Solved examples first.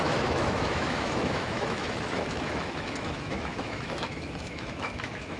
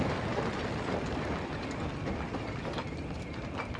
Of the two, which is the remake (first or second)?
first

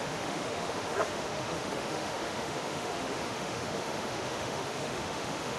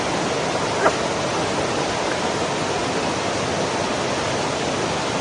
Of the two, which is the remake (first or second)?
first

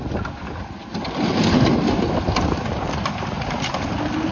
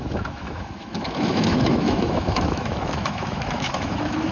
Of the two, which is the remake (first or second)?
second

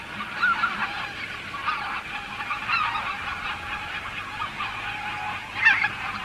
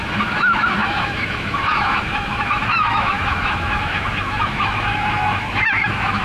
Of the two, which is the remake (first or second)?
second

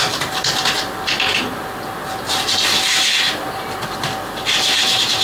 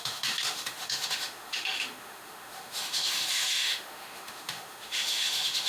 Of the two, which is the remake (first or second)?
second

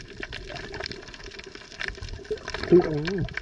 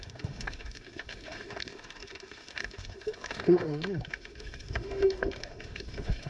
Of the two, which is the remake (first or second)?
second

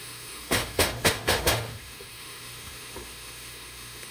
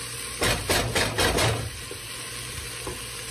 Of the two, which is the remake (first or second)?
first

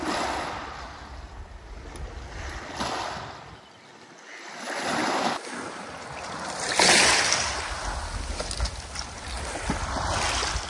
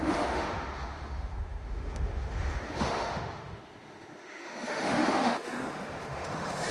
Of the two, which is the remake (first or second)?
second